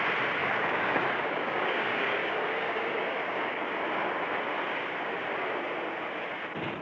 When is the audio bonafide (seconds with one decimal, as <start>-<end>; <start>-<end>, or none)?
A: 0.0-0.4; 3.6-6.8